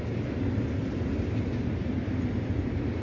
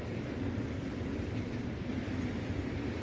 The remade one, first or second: second